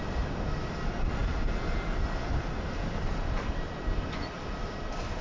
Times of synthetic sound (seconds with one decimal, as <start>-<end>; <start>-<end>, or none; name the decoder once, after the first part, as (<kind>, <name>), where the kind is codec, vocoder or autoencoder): none